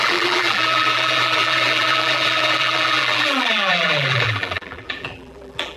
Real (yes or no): no